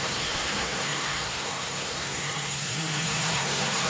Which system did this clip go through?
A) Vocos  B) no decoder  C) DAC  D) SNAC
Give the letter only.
D